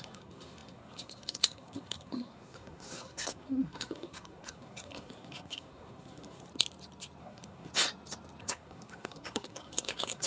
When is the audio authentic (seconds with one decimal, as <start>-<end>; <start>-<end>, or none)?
6.5-7.2; 7.7-8.4